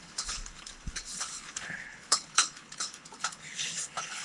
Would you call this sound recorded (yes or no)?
no